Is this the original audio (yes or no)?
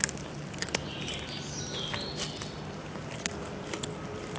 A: yes